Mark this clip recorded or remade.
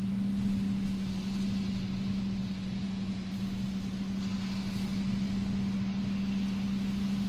recorded